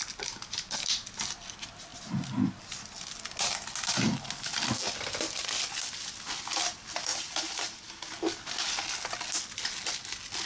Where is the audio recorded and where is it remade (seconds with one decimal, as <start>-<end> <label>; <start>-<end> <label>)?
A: 0.0-7.1 recorded; 7.1-8.1 remade; 8.1-10.5 recorded